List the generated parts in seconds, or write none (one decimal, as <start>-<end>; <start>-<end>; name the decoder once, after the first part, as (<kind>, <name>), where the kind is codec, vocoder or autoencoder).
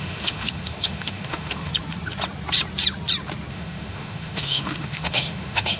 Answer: 0.0-1.7 (autoencoder, DAC-VAE); 3.5-5.8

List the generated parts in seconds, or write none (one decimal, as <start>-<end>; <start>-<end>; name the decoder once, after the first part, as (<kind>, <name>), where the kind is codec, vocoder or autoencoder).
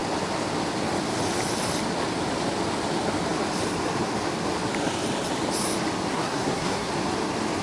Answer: 6.1-6.9 (codec, SNAC)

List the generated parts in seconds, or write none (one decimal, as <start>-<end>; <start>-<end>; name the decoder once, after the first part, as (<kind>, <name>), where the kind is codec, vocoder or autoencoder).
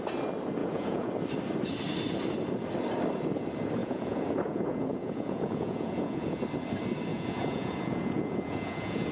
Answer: 0.6-1.1 (vocoder, Vocos); 3.8-6.4; 7.1-9.1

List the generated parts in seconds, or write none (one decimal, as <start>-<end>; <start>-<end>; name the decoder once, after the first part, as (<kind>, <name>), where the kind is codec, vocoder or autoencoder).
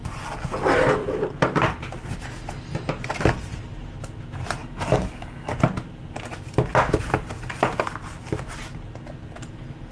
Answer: 4.6-5.5 (codec, DAC)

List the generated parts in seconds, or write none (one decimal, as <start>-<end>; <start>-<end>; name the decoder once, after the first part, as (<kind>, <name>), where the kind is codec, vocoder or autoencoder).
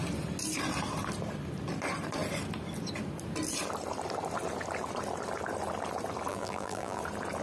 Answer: 6.3-7.0 (vocoder, BigVGAN v2)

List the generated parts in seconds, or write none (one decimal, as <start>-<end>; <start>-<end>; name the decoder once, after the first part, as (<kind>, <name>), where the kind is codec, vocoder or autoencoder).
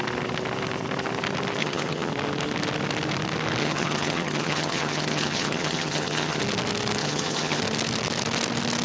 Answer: 1.6-2.1 (vocoder, HiFi-GAN); 3.6-6.4; 7.0-7.6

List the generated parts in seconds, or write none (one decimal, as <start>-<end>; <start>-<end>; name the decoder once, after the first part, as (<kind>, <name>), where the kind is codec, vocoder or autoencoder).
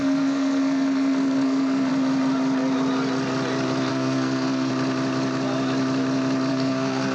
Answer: 0.0-1.9 (codec, SNAC); 3.9-4.7; 6.5-7.1